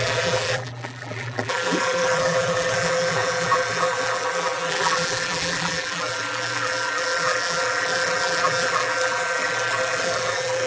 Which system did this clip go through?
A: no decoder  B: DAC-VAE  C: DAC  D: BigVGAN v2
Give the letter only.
D